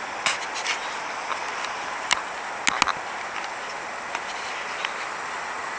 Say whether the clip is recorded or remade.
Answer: recorded